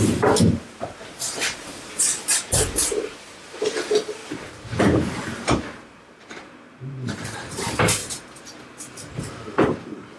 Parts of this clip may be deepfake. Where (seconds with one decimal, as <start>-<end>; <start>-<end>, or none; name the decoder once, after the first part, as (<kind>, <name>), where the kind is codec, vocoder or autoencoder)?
0.0-8.0 (vocoder, BigVGAN v2); 9.2-10.2